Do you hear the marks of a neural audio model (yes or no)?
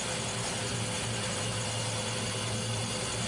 no